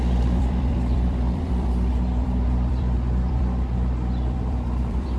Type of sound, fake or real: fake